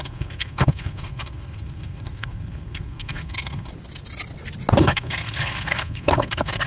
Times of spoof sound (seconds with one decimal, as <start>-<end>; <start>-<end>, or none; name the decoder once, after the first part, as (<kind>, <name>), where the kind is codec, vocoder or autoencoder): 0.0-3.7 (codec, SNAC); 4.8-6.7